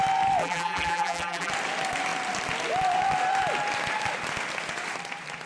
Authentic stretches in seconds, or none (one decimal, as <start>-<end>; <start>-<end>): 0.0-0.4; 1.5-5.5